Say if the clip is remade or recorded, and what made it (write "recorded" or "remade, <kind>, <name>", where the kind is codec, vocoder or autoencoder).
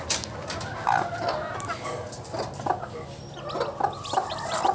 recorded